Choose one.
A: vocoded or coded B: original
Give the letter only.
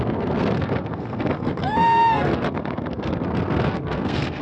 A